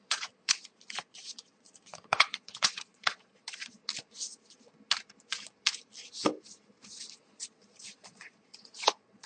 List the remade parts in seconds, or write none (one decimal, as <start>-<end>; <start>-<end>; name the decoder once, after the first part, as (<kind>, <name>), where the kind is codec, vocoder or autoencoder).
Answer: 0.0-3.8 (vocoder, Vocos); 7.2-9.3